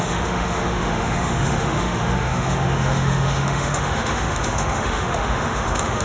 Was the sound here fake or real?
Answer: fake